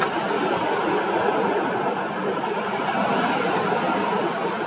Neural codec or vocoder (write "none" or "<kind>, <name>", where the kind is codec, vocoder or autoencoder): none